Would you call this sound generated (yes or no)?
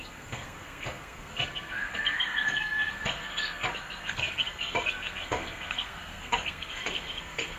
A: yes